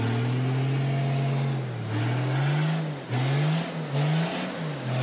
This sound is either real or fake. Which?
real